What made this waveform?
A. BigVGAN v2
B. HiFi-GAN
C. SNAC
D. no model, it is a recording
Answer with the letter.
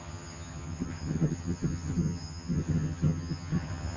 B